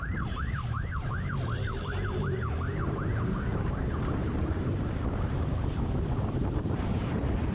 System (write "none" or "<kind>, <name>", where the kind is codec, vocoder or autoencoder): vocoder, BigVGAN v2